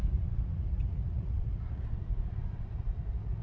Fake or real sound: fake